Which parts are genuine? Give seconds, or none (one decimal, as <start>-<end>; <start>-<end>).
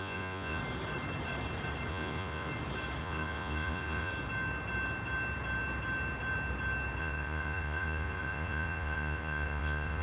0.6-1.9; 2.5-3.0; 4.1-7.0